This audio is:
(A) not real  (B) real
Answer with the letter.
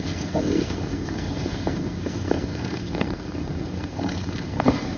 A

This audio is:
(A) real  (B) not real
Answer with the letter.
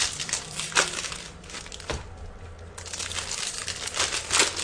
A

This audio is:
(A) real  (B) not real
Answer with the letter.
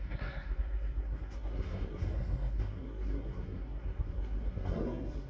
B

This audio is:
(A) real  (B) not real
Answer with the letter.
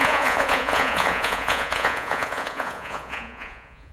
B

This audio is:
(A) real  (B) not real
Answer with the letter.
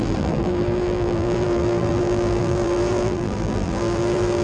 B